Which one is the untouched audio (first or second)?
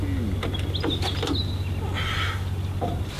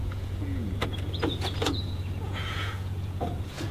first